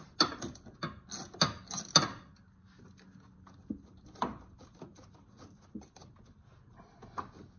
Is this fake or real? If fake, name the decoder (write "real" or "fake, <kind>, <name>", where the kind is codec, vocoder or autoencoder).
real